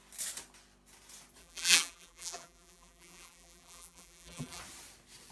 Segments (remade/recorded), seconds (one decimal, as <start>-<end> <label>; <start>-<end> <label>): 0.0-1.4 recorded; 1.4-4.6 remade; 4.6-5.3 recorded